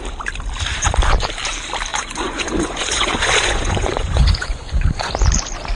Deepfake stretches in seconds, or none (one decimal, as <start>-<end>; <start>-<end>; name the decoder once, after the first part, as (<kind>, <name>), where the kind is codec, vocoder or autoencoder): 1.9-5.1 (vocoder, Vocos)